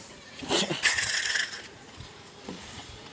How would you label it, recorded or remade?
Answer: remade